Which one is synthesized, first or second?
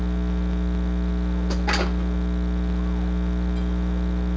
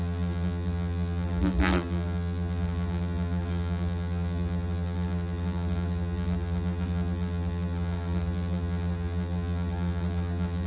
second